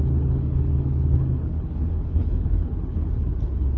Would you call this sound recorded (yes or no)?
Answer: no